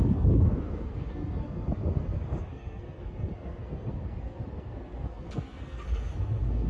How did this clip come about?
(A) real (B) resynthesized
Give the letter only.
B